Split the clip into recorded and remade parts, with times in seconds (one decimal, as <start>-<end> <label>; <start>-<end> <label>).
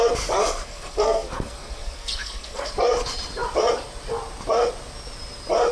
0.0-0.4 recorded; 0.4-2.7 remade; 2.7-5.7 recorded